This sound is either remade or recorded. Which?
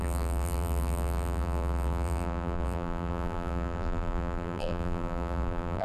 remade